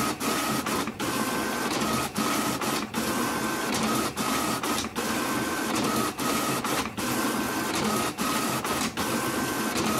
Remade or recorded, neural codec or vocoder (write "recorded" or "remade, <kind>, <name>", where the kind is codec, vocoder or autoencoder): recorded